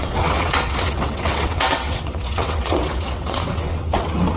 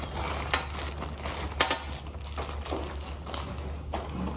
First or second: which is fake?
first